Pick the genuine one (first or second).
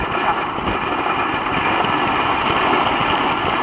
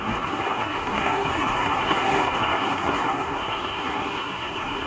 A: first